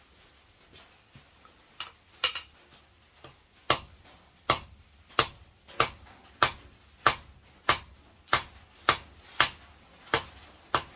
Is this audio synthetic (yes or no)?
no